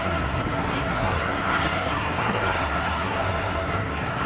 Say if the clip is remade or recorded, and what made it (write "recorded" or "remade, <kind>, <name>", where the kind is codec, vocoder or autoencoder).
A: remade, codec, SNAC